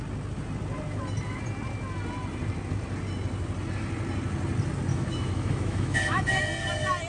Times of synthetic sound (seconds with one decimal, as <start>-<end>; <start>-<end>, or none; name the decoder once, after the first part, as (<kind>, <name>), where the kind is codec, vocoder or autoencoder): 4.9-6.4 (autoencoder, DAC-VAE)